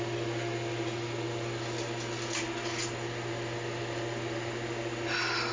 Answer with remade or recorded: recorded